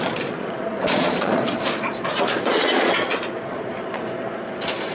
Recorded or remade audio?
remade